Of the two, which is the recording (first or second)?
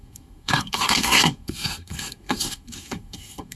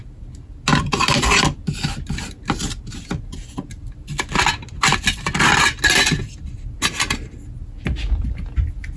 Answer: second